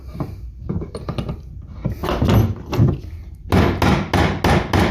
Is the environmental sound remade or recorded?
recorded